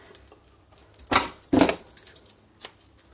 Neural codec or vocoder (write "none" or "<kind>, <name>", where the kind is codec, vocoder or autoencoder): none